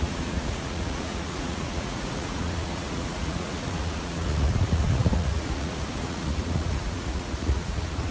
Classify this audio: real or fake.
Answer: fake